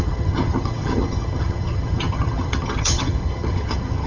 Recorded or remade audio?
remade